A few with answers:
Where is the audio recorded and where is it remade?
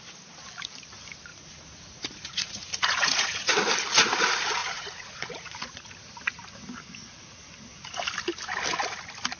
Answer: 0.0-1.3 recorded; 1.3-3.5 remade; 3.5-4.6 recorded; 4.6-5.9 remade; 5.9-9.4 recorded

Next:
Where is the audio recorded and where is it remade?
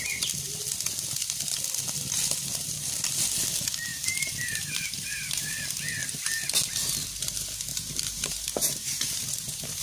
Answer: 0.0-3.9 recorded; 3.9-5.5 remade; 5.5-7.7 recorded; 7.7-9.8 remade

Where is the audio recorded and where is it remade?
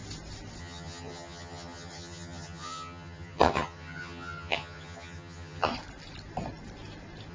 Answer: 0.0-0.6 recorded; 0.6-5.7 remade; 5.7-7.3 recorded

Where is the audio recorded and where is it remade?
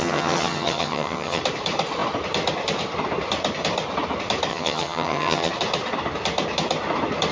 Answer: 0.0-1.4 remade; 1.4-4.5 recorded; 4.5-5.5 remade; 5.5-7.3 recorded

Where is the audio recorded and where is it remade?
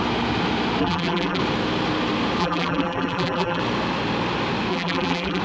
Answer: 0.0-0.8 recorded; 0.8-1.4 remade; 1.4-2.4 recorded; 2.4-3.6 remade; 3.6-4.7 recorded; 4.7-5.4 remade